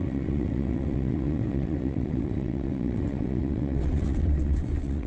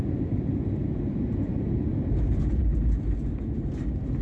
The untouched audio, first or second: second